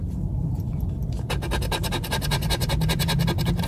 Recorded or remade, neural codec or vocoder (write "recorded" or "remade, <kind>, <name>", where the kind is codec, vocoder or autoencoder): recorded